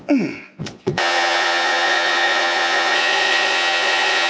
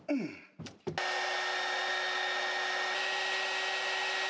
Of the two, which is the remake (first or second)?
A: first